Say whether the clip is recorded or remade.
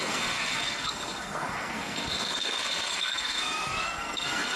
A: remade